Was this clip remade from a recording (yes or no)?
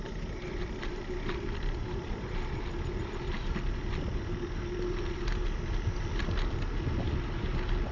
no